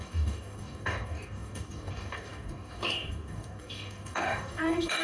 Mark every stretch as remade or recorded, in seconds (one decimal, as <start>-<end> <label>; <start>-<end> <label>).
0.0-5.0 remade